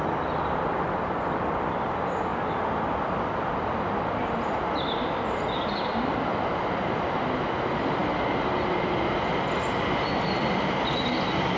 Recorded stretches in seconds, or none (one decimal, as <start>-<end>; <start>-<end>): 0.0-11.6

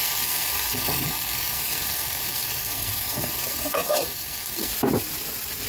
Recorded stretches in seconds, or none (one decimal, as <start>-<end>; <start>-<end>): 4.7-5.7